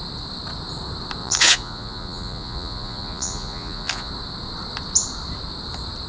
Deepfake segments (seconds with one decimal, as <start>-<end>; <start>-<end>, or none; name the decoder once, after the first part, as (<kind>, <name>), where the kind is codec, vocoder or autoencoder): 1.2-4.1 (vocoder, Vocos)